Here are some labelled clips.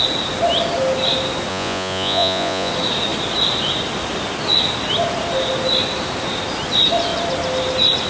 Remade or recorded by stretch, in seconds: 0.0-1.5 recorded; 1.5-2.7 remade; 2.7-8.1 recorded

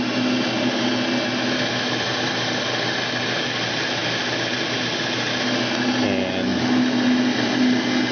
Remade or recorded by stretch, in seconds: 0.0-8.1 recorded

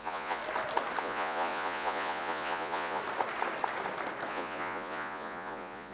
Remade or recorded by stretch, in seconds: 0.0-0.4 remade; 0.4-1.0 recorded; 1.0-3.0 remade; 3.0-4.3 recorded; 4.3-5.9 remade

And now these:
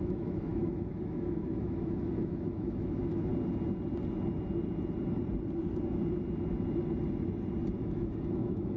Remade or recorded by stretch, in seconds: 0.0-3.3 remade; 3.3-7.8 recorded; 7.8-8.8 remade

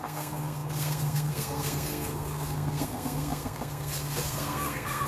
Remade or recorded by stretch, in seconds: 0.0-5.1 remade

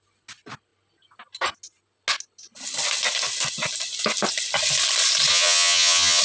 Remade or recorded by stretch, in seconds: 0.0-5.3 recorded; 5.3-6.2 remade

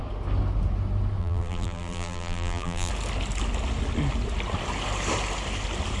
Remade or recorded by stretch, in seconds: 0.0-1.2 recorded; 1.2-2.9 remade; 2.9-6.0 recorded